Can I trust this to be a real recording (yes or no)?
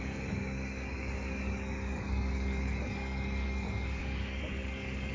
no